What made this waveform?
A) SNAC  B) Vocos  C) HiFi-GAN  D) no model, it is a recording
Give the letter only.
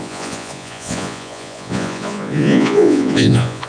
B